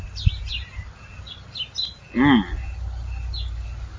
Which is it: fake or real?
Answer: real